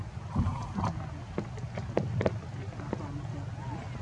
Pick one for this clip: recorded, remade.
recorded